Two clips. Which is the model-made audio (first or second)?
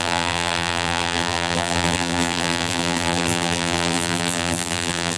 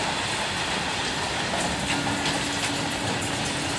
first